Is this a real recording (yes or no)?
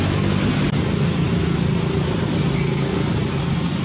yes